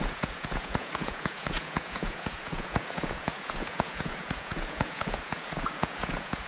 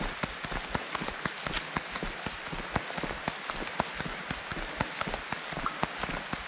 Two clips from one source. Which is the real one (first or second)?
second